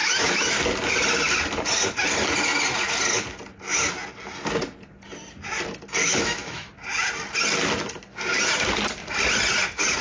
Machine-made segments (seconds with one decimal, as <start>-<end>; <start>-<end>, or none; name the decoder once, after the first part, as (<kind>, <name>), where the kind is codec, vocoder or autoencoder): 0.0-0.6 (autoencoder, DAC-VAE); 6.0-6.7